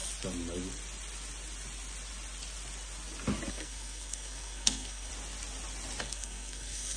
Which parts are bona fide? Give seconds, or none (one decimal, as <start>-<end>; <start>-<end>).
0.0-3.5; 5.1-6.0

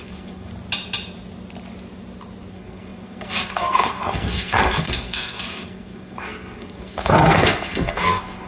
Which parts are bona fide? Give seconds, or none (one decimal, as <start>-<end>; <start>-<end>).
0.5-2.5

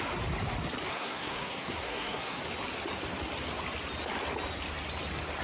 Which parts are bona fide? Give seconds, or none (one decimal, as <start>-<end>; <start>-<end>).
0.0-0.9; 2.4-5.4

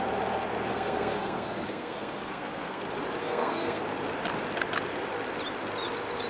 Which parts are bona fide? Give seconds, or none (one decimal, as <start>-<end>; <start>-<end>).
0.0-0.7; 2.8-3.2; 3.8-6.3

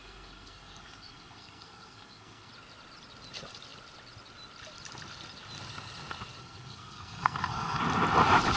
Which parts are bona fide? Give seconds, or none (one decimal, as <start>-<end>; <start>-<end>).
2.5-6.4; 7.8-8.6

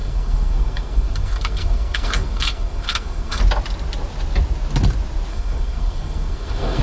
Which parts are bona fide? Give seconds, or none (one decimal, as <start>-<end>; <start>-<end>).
3.4-5.3